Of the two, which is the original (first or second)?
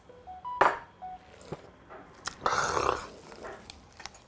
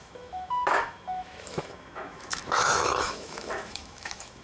first